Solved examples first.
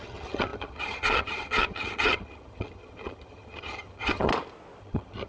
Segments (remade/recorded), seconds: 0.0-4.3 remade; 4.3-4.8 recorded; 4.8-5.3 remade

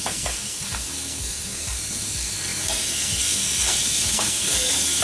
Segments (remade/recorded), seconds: 0.0-5.0 remade

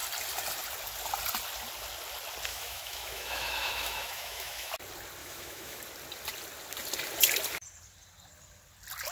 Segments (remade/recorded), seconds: 0.0-2.5 recorded; 2.5-4.7 remade; 4.7-5.2 recorded; 5.2-5.8 remade; 5.8-9.1 recorded

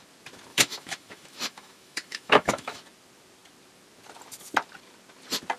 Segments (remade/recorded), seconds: 0.0-0.5 recorded; 0.5-2.8 remade; 2.8-5.6 recorded

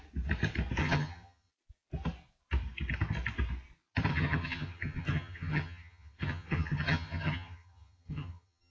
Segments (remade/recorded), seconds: 0.0-0.8 recorded; 0.8-1.5 remade; 1.5-4.1 recorded; 4.1-8.7 remade

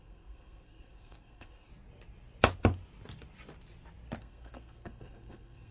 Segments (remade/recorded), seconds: 0.0-1.7 remade; 1.7-4.2 recorded; 4.2-5.7 remade

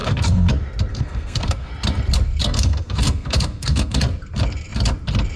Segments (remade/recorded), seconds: 0.0-0.5 remade; 0.5-0.9 recorded; 0.9-1.7 remade; 1.7-2.4 recorded; 2.4-4.0 remade; 4.0-5.4 recorded